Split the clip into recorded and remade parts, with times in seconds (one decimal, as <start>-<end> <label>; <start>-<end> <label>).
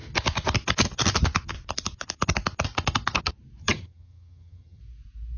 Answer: 0.0-3.6 recorded; 3.6-4.8 remade; 4.8-5.4 recorded